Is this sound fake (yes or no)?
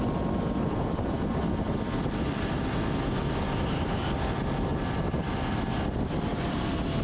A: no